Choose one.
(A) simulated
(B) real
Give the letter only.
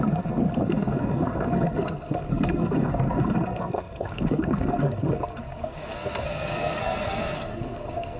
A